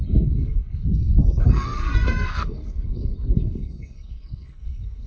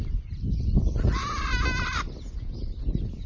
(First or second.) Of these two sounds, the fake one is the first